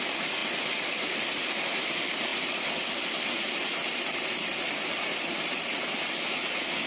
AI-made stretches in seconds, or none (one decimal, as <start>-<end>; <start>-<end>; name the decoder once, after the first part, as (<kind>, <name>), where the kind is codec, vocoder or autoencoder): none